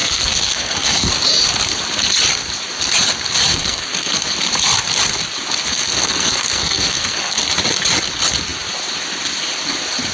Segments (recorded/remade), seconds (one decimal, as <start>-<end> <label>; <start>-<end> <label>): 0.0-1.1 remade; 1.1-3.5 recorded; 3.5-4.1 remade; 4.1-5.7 recorded; 5.7-7.4 remade; 7.4-10.1 recorded